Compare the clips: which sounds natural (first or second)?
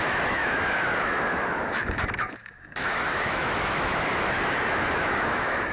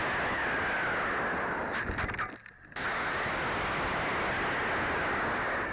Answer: second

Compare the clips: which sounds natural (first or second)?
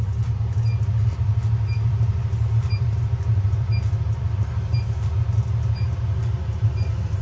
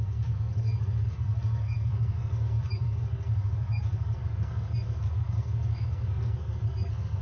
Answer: first